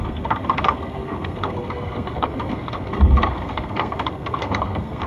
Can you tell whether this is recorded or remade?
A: remade